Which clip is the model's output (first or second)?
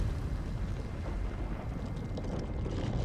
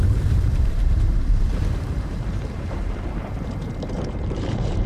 second